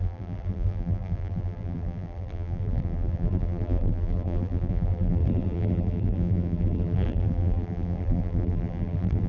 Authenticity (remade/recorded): remade